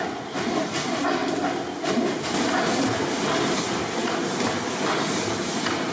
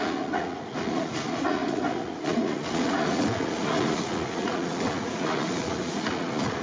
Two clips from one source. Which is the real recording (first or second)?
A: first